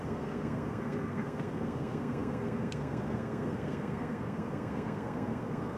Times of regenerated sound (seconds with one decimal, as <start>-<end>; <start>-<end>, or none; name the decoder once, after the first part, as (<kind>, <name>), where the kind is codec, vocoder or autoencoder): 0.0-5.8 (codec, SNAC)